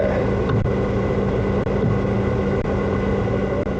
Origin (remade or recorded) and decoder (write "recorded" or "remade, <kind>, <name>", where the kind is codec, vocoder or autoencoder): recorded